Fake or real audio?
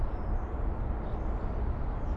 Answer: real